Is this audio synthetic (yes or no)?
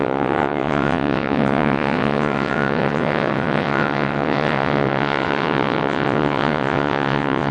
yes